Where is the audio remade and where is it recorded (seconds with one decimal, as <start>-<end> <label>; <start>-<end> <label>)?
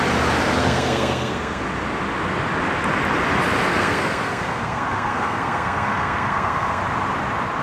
0.0-0.6 recorded; 0.6-1.6 remade; 1.6-3.7 recorded; 3.7-6.8 remade; 6.8-7.6 recorded